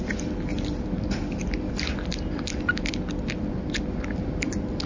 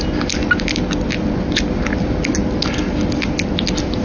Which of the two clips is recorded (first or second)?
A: second